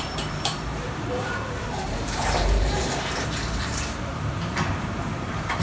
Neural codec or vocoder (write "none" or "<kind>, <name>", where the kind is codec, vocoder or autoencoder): vocoder, BigVGAN v2